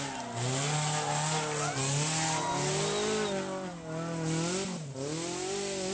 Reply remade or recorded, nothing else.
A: recorded